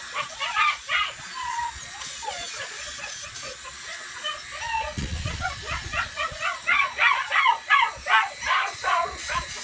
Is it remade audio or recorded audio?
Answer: remade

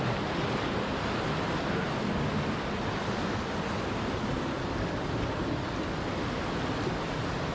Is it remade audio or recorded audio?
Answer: recorded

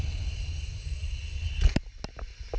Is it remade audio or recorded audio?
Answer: recorded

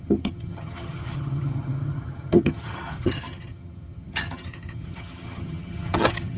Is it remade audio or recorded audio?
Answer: remade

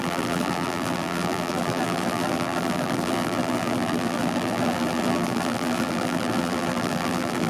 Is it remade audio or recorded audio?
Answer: remade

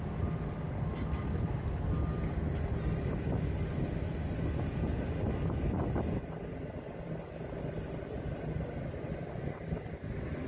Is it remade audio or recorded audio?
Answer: recorded